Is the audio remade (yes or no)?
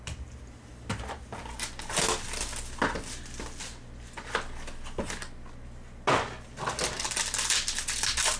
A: no